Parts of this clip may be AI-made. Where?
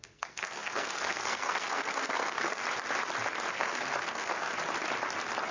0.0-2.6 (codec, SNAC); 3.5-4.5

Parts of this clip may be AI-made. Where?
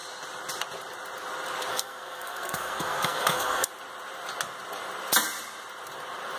1.7-3.7 (codec, SNAC)